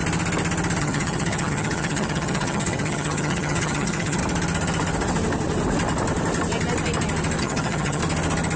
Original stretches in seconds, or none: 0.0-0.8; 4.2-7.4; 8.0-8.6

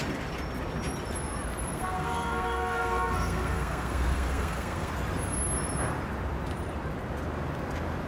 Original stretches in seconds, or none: 0.0-1.7; 4.9-8.1

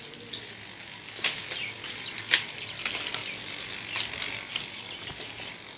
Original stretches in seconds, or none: 0.0-5.8

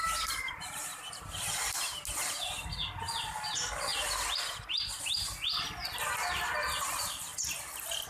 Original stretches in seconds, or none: 0.6-8.1

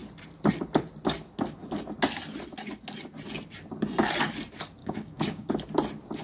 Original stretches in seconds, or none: 0.0-4.8; 5.5-6.2

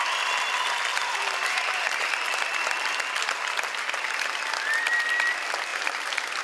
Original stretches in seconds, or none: 0.0-0.9; 2.1-5.7